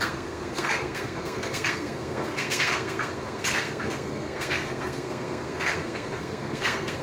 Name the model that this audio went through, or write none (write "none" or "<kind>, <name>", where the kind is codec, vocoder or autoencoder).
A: codec, SNAC